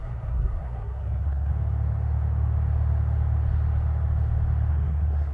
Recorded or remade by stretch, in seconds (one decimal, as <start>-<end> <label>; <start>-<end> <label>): 0.0-1.5 remade; 1.5-4.7 recorded; 4.7-5.3 remade